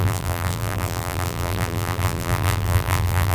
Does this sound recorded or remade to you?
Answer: remade